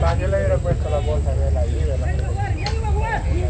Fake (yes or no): no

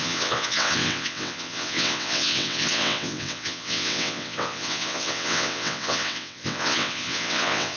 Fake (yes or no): yes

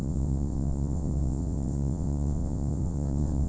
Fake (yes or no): yes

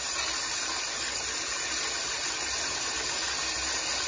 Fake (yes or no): no